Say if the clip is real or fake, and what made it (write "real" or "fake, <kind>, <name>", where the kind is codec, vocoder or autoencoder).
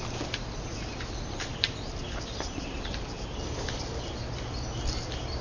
real